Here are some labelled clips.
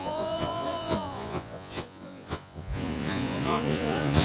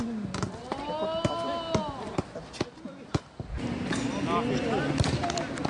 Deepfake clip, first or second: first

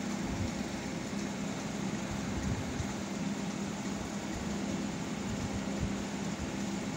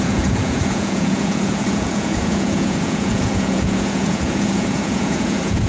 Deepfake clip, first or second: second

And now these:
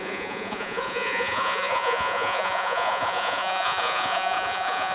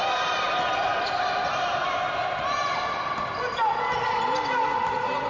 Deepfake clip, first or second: first